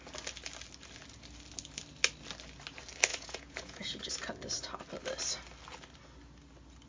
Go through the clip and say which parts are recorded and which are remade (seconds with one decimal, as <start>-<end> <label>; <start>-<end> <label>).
0.0-3.1 recorded; 3.1-4.1 remade; 4.1-6.9 recorded